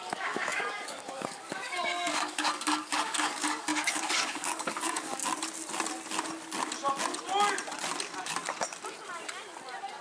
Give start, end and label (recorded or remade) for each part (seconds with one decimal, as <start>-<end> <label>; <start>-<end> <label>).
0.0-5.2 remade; 5.2-10.0 recorded